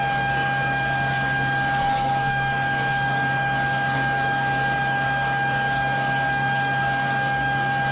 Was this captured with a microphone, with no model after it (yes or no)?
no